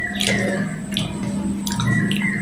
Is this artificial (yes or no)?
no